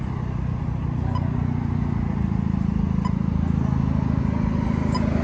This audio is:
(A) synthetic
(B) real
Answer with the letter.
B